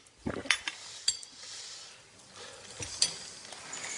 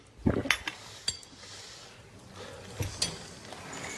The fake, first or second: first